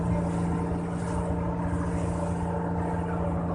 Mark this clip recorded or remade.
recorded